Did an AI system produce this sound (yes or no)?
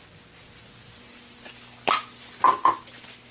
no